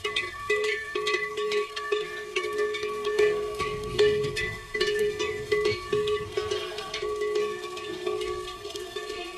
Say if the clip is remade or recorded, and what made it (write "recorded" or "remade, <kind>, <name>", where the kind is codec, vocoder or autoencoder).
remade, codec, SNAC